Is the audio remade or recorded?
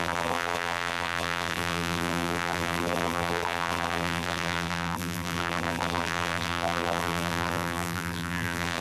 remade